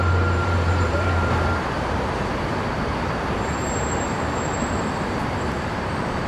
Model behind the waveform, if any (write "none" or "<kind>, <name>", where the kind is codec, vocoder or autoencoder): vocoder, BigVGAN v2